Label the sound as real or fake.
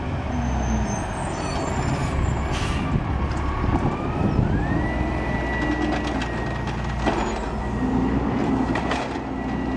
real